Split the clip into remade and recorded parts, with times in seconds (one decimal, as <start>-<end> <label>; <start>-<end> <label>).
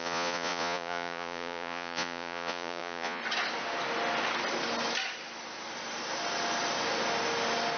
0.0-3.2 remade; 3.2-7.8 recorded